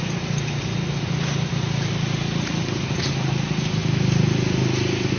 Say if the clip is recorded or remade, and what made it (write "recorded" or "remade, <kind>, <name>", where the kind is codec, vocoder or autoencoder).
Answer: recorded